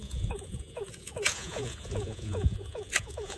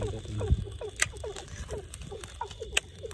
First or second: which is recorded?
second